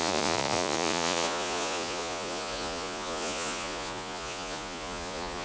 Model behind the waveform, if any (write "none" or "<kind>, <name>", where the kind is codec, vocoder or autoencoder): vocoder, Vocos